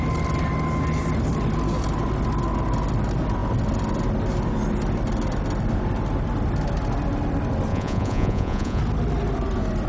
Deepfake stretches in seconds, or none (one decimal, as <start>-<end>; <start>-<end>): 7.7-8.8